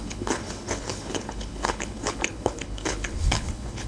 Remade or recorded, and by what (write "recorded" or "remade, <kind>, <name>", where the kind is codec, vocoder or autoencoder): remade, codec, HILCodec